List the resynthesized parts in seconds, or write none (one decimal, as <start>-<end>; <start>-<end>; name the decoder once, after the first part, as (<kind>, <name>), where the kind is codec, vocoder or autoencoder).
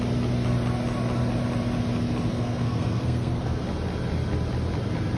2.3-3.6 (codec, SNAC)